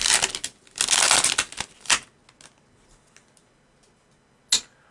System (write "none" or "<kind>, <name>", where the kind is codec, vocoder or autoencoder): none